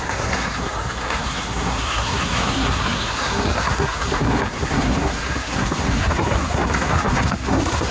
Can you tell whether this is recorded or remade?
remade